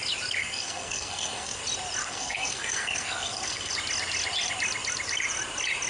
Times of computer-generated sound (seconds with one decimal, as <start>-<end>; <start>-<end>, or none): 0.4-1.6; 2.0-3.7